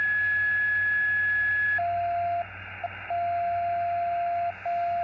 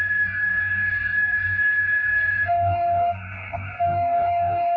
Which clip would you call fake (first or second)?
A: second